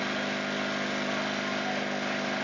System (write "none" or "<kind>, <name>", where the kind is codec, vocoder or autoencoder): none